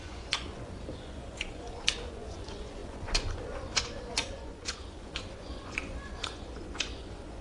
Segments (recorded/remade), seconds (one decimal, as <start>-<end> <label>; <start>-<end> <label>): 0.0-7.4 remade